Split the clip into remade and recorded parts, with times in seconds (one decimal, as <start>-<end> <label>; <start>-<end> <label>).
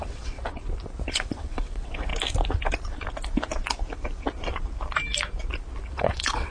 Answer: 0.0-0.6 remade; 0.6-1.1 recorded; 1.1-2.1 remade; 2.1-5.9 recorded; 5.9-6.5 remade